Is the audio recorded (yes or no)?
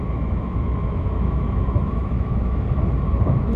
no